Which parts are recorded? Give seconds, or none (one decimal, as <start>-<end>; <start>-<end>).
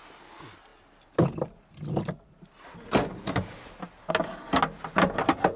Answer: 0.0-5.6